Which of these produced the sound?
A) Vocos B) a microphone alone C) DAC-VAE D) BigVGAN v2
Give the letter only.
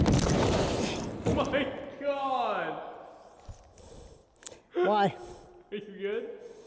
B